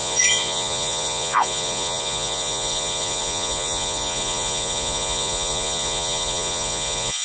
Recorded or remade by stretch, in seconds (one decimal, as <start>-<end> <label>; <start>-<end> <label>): 0.0-7.2 remade